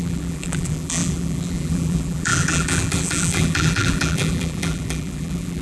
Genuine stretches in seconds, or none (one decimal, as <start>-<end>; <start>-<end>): none